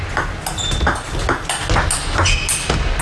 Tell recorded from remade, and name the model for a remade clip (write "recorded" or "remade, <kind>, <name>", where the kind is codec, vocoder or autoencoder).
recorded